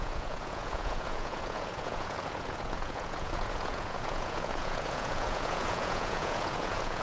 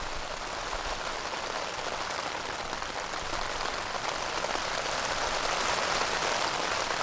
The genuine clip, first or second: second